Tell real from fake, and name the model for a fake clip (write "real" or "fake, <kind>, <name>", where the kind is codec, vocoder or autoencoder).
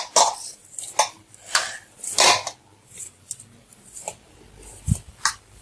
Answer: real